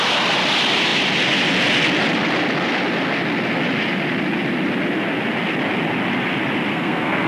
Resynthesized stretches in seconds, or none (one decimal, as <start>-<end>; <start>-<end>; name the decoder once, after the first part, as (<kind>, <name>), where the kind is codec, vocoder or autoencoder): 6.7-7.3 (codec, SNAC)